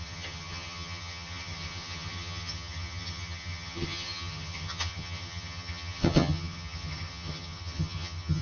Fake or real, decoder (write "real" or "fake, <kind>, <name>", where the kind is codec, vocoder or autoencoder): fake, vocoder, HiFi-GAN